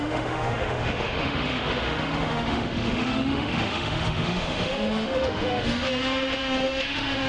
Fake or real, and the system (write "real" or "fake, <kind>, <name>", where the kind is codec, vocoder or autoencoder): fake, autoencoder, DAC-VAE